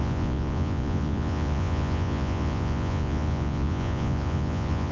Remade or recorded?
remade